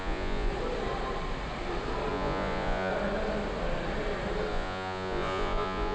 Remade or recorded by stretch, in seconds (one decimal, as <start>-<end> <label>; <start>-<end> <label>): 0.0-0.5 remade; 0.5-2.1 recorded; 2.1-2.9 remade; 2.9-4.5 recorded; 4.5-5.9 remade